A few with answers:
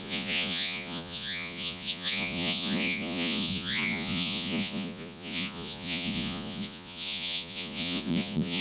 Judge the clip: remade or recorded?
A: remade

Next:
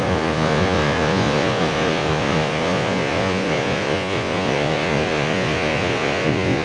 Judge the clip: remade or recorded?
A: remade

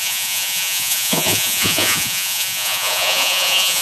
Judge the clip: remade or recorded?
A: remade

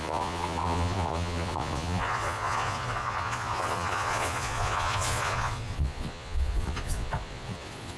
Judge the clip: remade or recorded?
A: remade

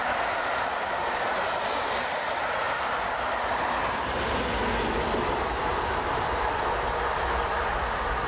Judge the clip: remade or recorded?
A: recorded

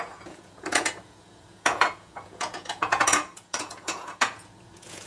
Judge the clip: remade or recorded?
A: remade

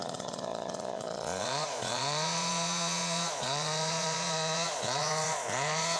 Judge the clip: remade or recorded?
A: remade